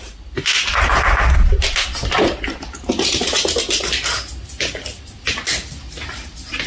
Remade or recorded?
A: recorded